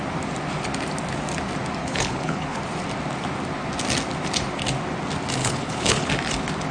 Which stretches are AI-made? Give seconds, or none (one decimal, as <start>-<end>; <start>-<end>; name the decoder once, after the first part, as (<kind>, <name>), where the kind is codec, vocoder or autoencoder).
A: 1.8-2.6 (codec, HILCodec); 5.4-6.1

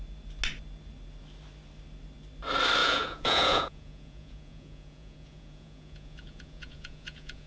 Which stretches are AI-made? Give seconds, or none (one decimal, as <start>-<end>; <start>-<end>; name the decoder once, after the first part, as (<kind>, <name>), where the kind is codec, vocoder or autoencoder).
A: 2.8-7.5 (vocoder, Vocos)

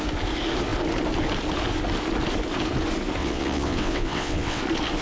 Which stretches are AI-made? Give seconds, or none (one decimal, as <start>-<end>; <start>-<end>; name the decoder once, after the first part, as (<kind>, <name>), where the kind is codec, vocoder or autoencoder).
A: 3.2-4.6 (vocoder, WaveNeXt)

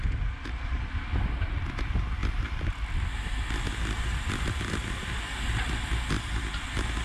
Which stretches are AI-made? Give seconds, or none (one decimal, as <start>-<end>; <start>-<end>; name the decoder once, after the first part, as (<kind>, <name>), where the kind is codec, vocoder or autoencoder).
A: none

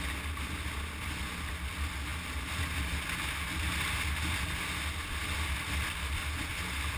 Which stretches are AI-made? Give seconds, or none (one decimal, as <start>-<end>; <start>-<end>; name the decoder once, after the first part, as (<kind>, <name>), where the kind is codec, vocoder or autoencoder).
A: none

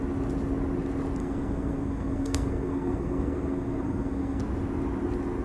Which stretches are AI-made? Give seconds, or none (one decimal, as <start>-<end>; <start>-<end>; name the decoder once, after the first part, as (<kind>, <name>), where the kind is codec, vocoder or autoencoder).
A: 1.2-4.4 (codec, SNAC)